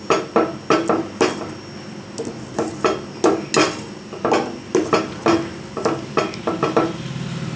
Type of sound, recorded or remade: recorded